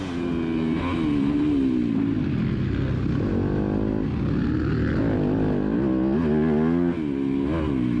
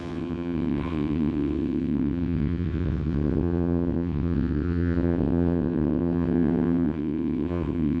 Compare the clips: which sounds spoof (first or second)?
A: second